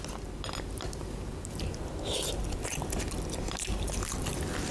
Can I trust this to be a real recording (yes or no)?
yes